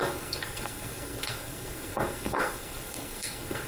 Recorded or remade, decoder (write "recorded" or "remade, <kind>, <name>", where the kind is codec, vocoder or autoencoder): remade, codec, SNAC